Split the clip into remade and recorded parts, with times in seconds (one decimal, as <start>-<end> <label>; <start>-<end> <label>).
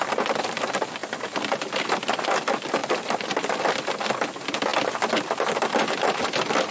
0.0-6.7 recorded